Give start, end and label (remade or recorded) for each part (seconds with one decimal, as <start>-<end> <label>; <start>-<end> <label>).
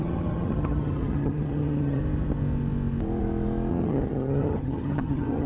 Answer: 0.0-2.0 remade; 2.0-3.7 recorded; 3.7-5.5 remade